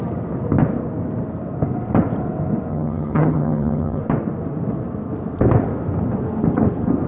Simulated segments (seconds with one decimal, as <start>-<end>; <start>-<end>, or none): 2.7-4.0